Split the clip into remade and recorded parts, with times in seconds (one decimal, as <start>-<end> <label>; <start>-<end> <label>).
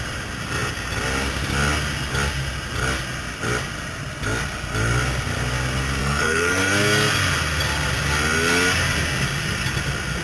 0.0-6.0 recorded; 6.0-6.7 remade; 6.7-10.2 recorded